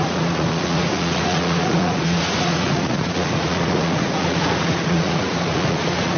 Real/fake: fake